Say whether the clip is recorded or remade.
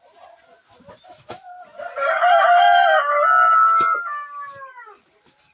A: recorded